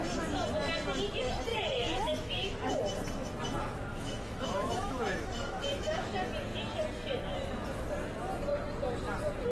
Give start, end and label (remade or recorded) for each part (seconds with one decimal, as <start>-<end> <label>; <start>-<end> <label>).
0.0-1.5 recorded; 1.5-2.8 remade; 2.8-3.9 recorded; 3.9-6.1 remade; 6.1-9.5 recorded